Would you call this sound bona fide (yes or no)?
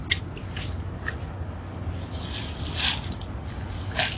yes